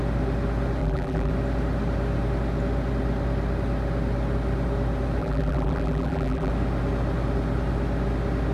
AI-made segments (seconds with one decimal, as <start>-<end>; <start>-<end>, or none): 0.8-1.3; 5.2-6.5